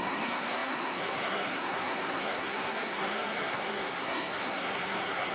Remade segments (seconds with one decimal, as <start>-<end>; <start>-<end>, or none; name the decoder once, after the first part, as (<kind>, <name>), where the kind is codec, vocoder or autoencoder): 0.0-5.3 (codec, SNAC)